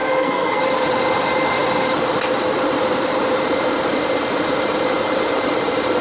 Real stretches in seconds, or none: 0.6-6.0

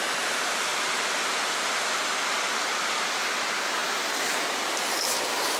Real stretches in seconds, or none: 0.0-5.6

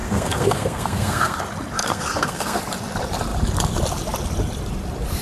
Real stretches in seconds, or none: 1.4-1.8; 2.6-5.2

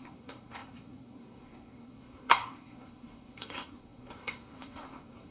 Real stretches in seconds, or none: none

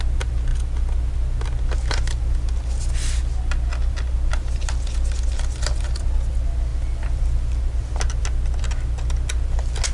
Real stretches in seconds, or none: 0.0-9.9

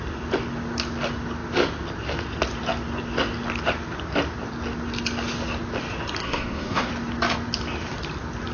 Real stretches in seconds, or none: 0.0-6.2; 6.9-8.5